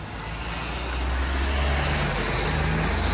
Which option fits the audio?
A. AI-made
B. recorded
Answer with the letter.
B